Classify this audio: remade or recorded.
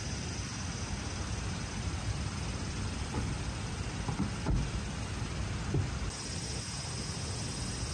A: recorded